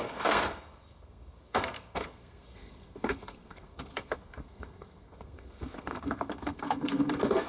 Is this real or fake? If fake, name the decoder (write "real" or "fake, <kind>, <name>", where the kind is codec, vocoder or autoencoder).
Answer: fake, codec, SNAC